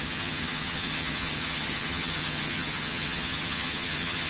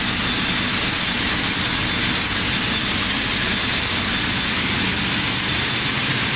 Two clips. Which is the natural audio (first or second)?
second